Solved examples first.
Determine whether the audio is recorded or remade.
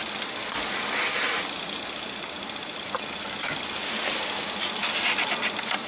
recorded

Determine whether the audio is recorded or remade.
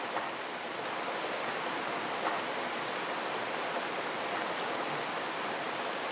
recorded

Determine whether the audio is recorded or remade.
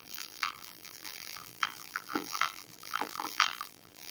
remade